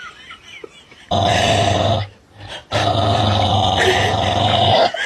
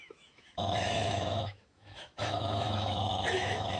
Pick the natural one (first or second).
first